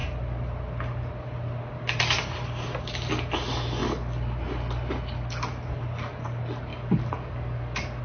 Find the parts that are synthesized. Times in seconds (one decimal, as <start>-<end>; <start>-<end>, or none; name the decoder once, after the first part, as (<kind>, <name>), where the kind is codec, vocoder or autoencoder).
6.7-8.0 (codec, DAC)